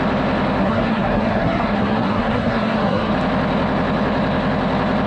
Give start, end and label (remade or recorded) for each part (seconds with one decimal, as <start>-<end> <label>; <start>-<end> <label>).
0.0-0.6 recorded; 0.6-3.1 remade; 3.1-5.1 recorded